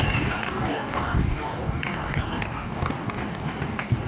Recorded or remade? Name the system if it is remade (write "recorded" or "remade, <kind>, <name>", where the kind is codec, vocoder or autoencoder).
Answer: remade, codec, DAC